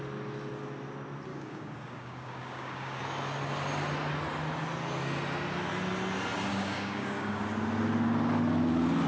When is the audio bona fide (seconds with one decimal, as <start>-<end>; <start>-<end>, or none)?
0.0-1.3; 3.0-6.5; 7.4-9.1